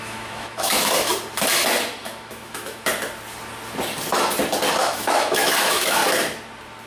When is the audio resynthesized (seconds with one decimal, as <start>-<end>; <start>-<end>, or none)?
0.0-1.1; 2.0-2.9; 4.8-6.0